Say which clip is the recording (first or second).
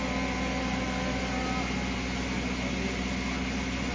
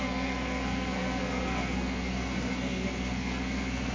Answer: first